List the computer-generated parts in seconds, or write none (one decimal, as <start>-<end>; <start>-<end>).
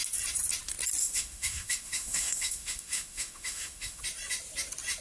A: 1.0-4.0